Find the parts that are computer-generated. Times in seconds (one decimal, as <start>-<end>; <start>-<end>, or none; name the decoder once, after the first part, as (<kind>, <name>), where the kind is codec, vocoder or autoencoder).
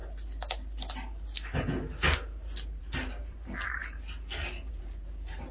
2.8-3.8 (vocoder, BigVGAN v2); 4.7-5.5